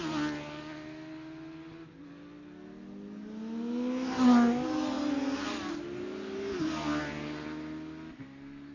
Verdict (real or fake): real